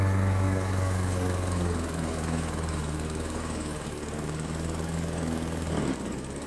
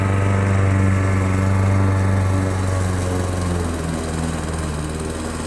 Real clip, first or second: second